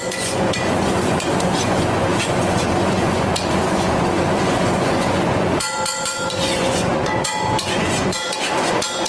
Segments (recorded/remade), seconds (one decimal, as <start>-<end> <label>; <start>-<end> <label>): 0.0-9.1 remade

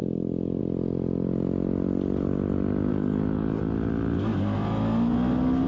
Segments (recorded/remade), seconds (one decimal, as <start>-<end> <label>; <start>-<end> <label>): 0.0-2.9 recorded; 2.9-3.6 remade; 3.6-5.7 recorded

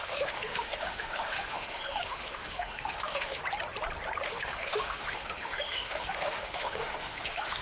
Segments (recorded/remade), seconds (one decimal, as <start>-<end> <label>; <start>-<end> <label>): 0.0-3.4 remade; 3.4-4.3 recorded; 4.3-7.6 remade

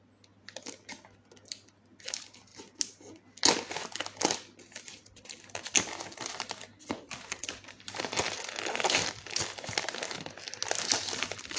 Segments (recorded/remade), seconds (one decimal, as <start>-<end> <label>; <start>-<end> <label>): 0.0-11.6 recorded

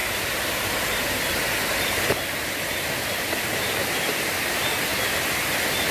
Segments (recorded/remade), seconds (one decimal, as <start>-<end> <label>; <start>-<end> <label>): 0.0-5.9 recorded

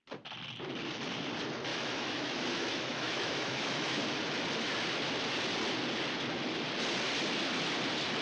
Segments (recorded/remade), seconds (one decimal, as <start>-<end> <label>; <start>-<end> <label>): 0.0-1.7 recorded; 1.7-4.0 remade; 4.0-8.2 recorded